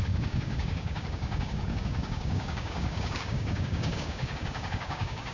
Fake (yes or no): yes